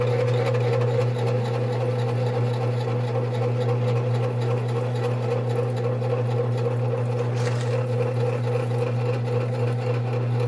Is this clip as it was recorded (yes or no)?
yes